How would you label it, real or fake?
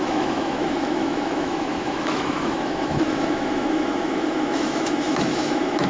fake